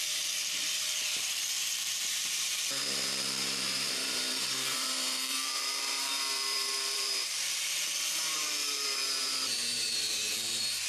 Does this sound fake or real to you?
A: fake